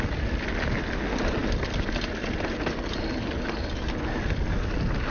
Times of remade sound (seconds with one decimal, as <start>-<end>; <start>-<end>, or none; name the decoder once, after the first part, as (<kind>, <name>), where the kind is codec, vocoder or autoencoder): none